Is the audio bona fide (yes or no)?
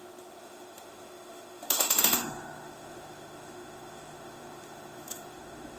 no